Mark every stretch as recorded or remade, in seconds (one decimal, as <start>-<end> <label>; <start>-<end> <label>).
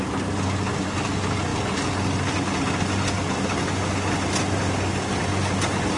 0.0-6.0 recorded